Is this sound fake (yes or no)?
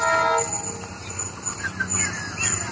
no